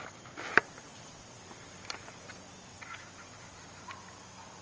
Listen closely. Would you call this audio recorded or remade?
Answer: recorded